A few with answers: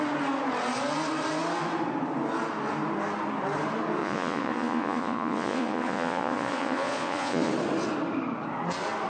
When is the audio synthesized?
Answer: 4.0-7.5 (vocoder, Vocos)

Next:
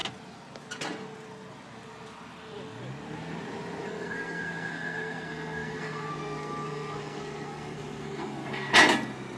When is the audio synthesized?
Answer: 3.8-8.7 (codec, SNAC)

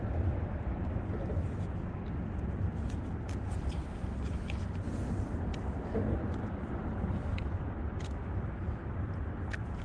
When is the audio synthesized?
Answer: none

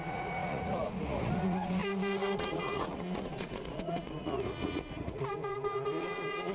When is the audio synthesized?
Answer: 0.0-6.5 (vocoder, Vocos)